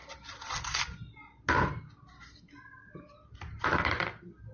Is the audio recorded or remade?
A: recorded